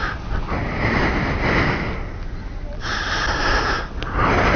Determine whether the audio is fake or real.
real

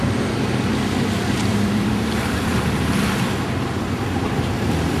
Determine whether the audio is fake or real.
fake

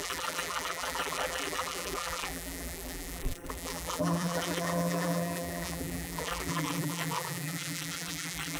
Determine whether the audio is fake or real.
fake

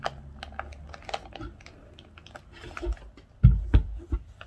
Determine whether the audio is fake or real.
real